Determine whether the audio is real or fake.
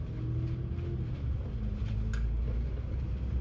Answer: real